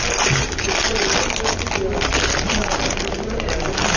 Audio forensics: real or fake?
real